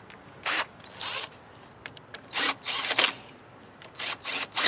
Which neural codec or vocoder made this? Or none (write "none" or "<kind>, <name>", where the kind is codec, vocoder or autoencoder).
none